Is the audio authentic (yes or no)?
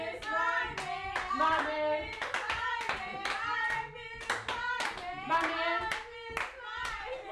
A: yes